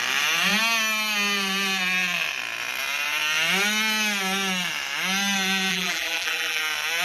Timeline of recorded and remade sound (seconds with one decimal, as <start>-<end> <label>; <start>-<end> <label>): 0.0-5.7 recorded; 5.7-6.6 remade; 6.6-7.0 recorded